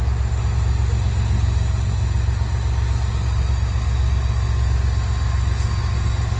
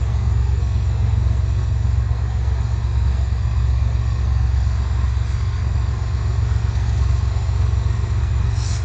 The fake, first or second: second